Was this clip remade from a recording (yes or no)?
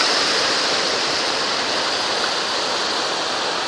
no